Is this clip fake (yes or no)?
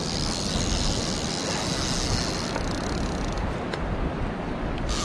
no